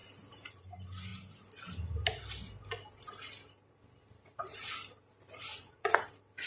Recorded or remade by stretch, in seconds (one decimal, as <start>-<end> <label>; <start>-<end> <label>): 0.0-5.5 recorded; 5.5-6.0 remade; 6.0-6.5 recorded